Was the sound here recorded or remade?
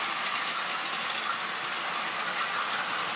recorded